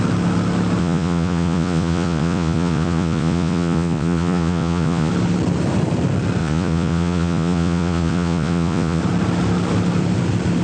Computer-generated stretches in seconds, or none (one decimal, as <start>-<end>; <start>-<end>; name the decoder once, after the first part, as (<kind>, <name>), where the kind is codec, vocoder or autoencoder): 0.8-5.1 (vocoder, Vocos); 6.4-9.0